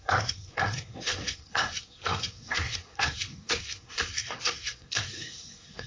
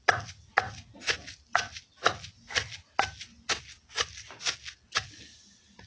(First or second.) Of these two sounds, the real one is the second